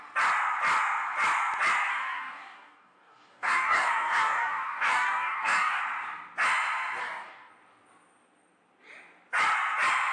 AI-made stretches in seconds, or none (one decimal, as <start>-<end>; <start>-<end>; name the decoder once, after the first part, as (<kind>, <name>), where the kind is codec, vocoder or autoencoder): 1.9-5.8 (codec, DAC); 7.0-7.5